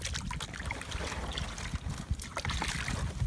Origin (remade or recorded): recorded